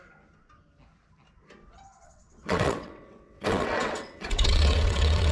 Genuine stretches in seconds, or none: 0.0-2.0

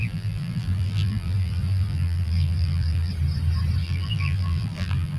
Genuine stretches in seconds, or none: 3.1-3.8